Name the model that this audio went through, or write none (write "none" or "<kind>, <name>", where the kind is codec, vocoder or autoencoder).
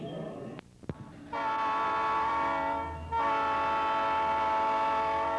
none